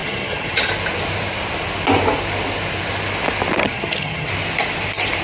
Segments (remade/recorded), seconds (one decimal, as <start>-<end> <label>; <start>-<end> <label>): 0.0-0.7 remade; 0.7-3.6 recorded; 3.6-4.3 remade; 4.3-5.2 recorded